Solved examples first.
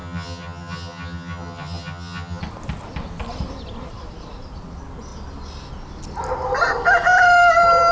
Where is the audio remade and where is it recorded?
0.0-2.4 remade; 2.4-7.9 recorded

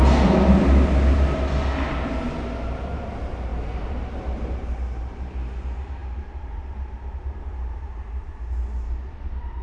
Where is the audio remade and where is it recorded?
0.0-3.5 recorded; 3.5-4.1 remade; 4.1-6.0 recorded; 6.0-7.4 remade; 7.4-9.6 recorded

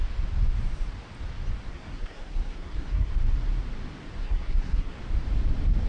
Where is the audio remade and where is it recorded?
0.0-1.7 recorded; 1.7-3.1 remade; 3.1-4.2 recorded; 4.2-5.0 remade; 5.0-5.9 recorded

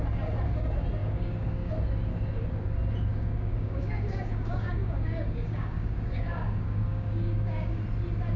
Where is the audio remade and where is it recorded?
0.0-1.0 recorded; 1.0-1.7 remade; 1.7-3.1 recorded; 3.1-7.8 remade; 7.8-8.4 recorded

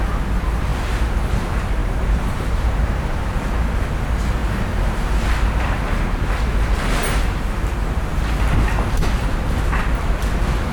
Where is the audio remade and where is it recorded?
0.0-1.8 recorded; 1.8-3.2 remade; 3.2-4.4 recorded; 4.4-7.4 remade; 7.4-10.7 recorded

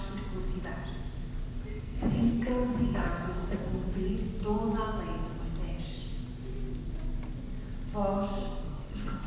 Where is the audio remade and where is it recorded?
0.0-1.7 recorded; 1.7-4.1 remade; 4.1-8.4 recorded; 8.4-9.3 remade